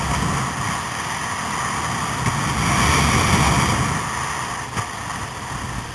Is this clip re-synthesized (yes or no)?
no